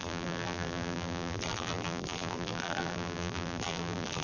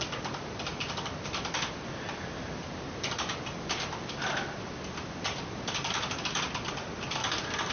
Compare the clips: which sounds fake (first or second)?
first